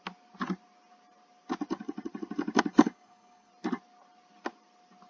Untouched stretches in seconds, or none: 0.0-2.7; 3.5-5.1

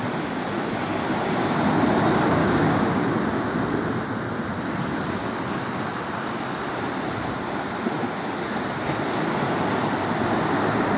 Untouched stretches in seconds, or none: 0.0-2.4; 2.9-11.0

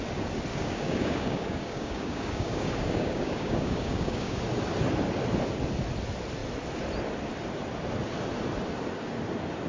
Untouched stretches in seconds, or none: 0.0-0.5; 4.4-9.7

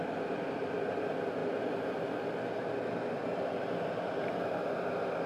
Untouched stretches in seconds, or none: 0.0-5.3

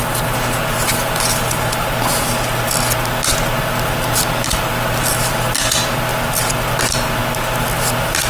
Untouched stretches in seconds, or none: 0.0-8.3

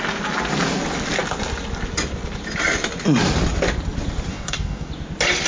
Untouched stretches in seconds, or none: 0.0-4.3; 4.9-5.5